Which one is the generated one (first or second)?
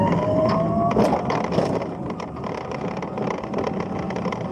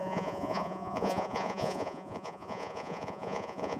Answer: second